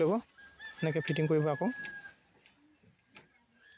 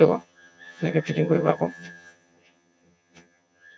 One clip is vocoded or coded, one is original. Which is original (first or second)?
first